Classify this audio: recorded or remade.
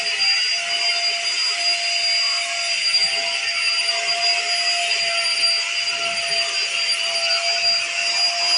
recorded